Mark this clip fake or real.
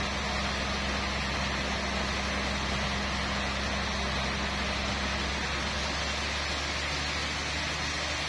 real